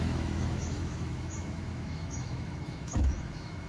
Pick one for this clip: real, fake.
fake